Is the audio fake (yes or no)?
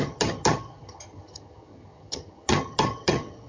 yes